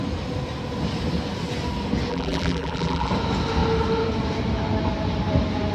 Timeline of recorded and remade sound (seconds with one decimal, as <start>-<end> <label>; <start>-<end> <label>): 0.0-2.1 recorded; 2.1-3.1 remade; 3.1-5.7 recorded